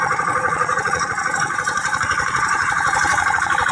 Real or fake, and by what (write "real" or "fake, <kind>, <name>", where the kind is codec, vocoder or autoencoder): fake, vocoder, Vocos